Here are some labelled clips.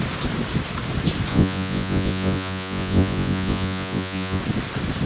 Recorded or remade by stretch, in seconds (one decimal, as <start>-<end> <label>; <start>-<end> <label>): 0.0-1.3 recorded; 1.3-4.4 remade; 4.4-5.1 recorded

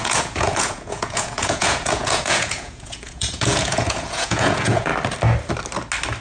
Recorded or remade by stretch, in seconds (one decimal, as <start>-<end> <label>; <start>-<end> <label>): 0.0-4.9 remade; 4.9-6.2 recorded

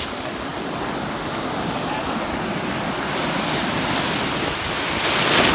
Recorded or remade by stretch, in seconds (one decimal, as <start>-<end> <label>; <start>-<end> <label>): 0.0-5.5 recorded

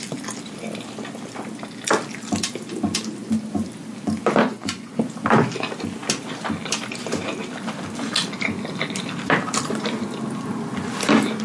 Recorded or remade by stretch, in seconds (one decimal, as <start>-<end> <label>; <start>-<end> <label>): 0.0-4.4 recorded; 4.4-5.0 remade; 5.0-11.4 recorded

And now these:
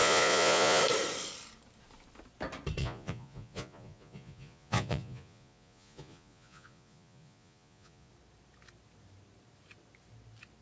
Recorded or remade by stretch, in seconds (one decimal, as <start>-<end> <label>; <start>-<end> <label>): 0.0-0.8 remade; 0.8-2.8 recorded; 2.8-8.1 remade; 8.1-10.6 recorded

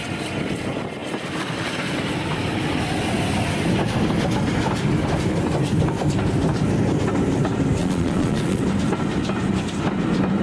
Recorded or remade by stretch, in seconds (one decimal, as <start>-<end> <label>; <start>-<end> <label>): 0.0-7.8 recorded; 7.8-8.6 remade; 8.6-10.4 recorded